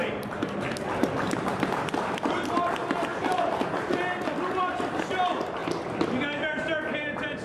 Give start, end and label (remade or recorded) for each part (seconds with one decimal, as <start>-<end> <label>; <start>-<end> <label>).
0.0-3.1 recorded; 3.1-3.7 remade; 3.7-7.4 recorded